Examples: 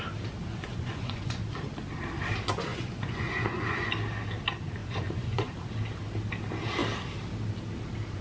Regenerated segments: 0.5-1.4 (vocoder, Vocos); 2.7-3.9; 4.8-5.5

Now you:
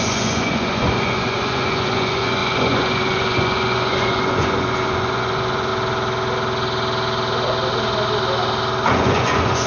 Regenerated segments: 0.0-5.7 (vocoder, Vocos); 8.9-9.7

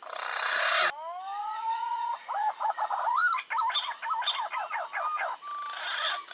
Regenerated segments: 1.4-3.2 (vocoder, Vocos); 5.8-6.3

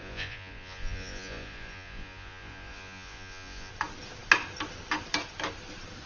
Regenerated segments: 0.0-3.7 (vocoder, Vocos)

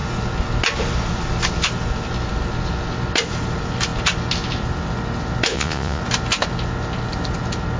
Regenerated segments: 5.5-6.0 (vocoder, Vocos)

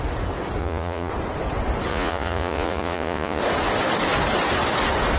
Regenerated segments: 0.6-1.1 (vocoder, Vocos); 1.9-3.4